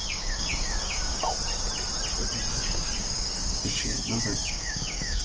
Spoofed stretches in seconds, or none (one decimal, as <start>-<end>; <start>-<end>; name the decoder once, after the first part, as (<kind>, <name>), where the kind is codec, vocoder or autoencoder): 0.0-1.2 (codec, DAC); 2.5-5.2